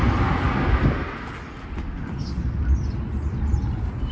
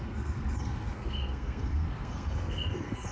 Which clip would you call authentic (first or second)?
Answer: first